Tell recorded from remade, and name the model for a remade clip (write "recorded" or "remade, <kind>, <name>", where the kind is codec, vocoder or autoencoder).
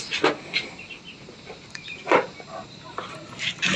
recorded